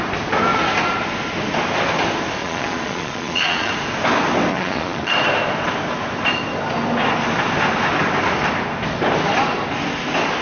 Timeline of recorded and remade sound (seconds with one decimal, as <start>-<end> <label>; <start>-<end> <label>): 0.0-2.4 recorded; 2.4-3.7 remade; 3.7-4.5 recorded; 4.5-5.1 remade; 5.1-10.4 recorded